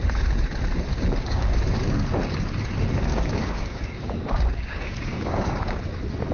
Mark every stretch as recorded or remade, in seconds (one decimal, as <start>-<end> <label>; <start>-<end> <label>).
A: 0.0-0.9 recorded; 0.9-1.6 remade; 1.6-3.1 recorded; 3.1-5.8 remade; 5.8-6.3 recorded